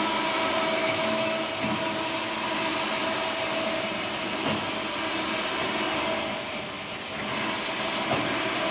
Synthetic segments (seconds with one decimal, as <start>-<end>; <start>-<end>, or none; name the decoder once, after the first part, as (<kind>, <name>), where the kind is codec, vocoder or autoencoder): 0.8-1.5 (autoencoder, DAC-VAE)